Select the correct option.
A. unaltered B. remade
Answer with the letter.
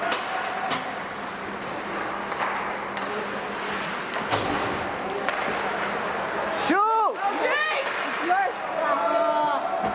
A